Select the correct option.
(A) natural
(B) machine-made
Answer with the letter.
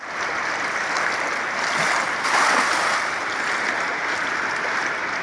A